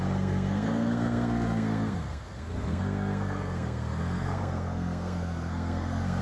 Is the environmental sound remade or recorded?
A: remade